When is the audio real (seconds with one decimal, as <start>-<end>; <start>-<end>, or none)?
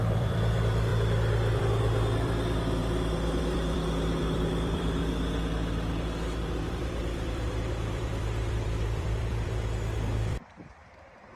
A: 2.8-3.4; 5.0-6.7